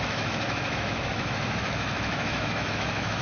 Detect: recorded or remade remade